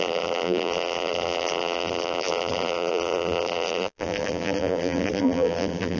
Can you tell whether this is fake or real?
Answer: fake